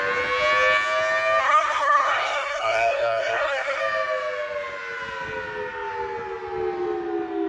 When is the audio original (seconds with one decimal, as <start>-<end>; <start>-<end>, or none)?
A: 0.0-1.4; 3.8-7.5